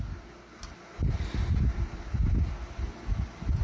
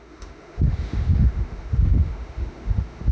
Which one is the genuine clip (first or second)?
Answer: first